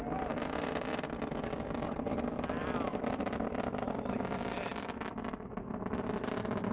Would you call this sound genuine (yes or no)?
no